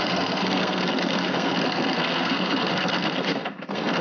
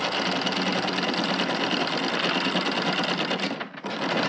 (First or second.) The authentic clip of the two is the second